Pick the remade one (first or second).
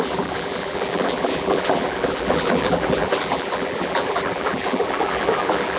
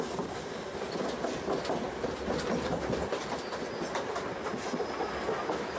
first